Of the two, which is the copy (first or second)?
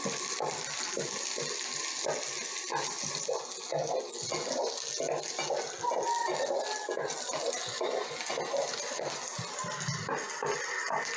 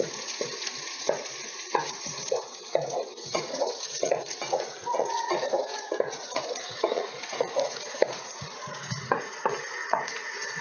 second